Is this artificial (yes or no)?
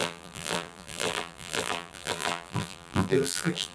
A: yes